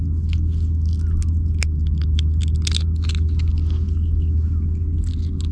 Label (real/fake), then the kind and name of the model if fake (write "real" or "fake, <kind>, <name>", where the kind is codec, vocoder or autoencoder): real